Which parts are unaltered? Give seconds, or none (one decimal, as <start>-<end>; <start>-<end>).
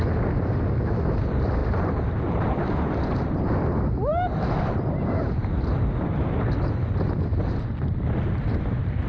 0.0-1.6; 3.4-9.1